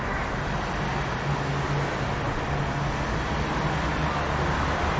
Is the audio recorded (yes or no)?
yes